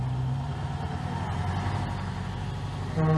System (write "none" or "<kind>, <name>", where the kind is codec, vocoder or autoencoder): none